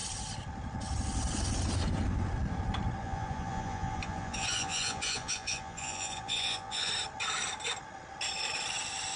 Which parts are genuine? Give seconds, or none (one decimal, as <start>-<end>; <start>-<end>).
0.0-3.0; 6.9-9.2